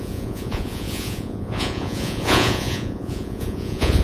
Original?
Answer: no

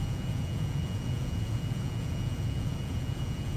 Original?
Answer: no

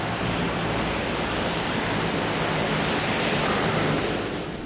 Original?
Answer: yes